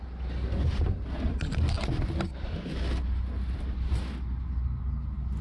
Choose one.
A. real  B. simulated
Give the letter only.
A